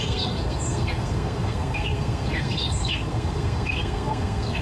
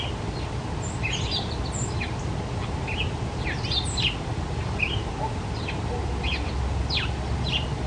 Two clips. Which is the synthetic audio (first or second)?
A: first